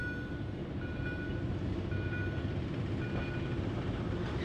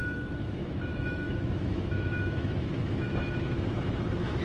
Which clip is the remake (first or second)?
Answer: second